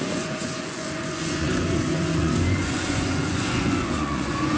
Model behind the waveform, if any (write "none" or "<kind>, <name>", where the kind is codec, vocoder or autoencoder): vocoder, Vocos